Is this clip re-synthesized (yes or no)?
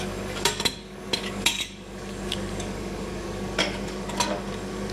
yes